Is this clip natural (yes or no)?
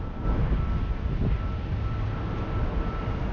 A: yes